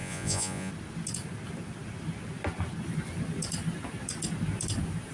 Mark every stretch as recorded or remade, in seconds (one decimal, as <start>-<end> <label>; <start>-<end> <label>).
0.0-0.7 remade; 0.7-5.1 recorded